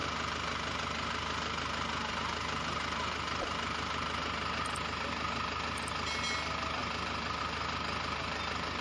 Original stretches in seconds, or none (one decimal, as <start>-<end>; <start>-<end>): 0.0-8.8